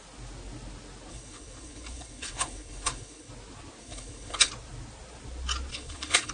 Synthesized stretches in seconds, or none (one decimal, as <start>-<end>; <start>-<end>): 1.1-3.3; 3.8-4.5; 5.7-6.3